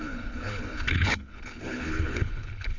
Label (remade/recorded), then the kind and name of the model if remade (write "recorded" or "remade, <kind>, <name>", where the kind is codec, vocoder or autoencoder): remade, codec, HILCodec